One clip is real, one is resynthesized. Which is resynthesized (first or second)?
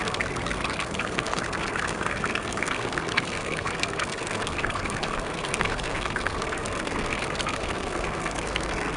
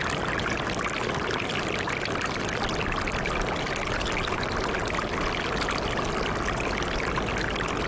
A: first